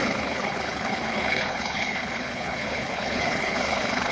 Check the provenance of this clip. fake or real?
fake